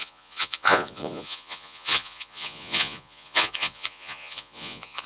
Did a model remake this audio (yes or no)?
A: yes